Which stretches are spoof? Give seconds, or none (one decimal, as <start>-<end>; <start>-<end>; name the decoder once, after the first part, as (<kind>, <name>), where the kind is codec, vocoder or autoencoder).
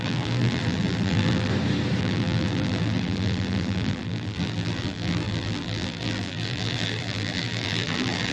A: 0.0-1.5 (vocoder, BigVGAN v2); 2.0-8.3